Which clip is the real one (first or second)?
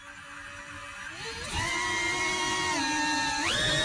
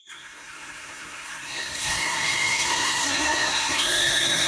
first